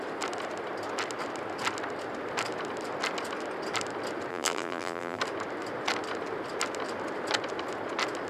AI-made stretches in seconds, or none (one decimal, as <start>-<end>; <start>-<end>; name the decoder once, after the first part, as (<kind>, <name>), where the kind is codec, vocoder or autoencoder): 4.3-5.2 (vocoder, BigVGAN v2)